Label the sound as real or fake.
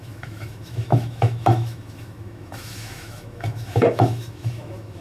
fake